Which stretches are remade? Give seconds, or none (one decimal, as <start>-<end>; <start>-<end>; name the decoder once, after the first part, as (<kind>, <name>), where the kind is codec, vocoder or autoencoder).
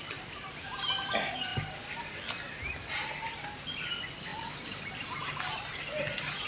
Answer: none